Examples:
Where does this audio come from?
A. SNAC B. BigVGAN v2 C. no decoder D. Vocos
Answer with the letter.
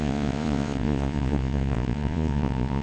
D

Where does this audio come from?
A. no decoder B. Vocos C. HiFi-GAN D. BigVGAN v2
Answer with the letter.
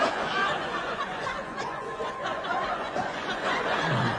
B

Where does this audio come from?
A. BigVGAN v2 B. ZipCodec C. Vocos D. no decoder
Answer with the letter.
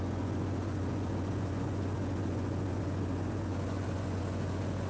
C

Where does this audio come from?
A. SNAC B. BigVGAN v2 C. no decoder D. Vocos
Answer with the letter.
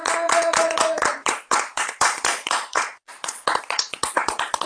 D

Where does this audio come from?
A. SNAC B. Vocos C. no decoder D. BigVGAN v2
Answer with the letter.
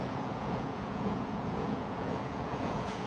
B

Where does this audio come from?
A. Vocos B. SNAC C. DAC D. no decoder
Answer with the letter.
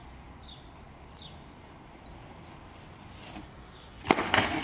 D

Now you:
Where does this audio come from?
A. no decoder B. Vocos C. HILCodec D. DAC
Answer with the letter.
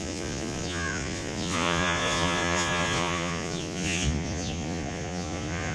B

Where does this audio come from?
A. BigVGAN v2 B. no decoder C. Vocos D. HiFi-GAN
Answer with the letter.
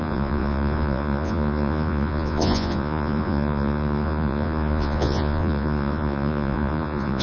C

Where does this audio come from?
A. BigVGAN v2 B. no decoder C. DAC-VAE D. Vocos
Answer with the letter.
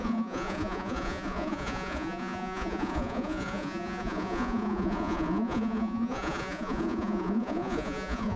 D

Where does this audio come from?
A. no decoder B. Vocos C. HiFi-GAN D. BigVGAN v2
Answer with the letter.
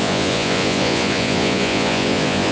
B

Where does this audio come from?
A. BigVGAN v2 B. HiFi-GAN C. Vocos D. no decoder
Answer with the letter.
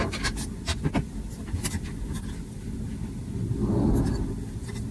D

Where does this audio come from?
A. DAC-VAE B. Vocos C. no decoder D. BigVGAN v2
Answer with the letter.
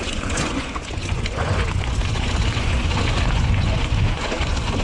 B